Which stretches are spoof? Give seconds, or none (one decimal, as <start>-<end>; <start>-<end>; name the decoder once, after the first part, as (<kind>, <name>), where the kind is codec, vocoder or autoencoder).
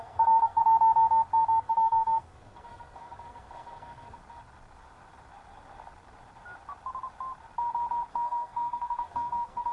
0.0-0.6 (codec, SNAC); 1.6-4.2; 8.1-9.7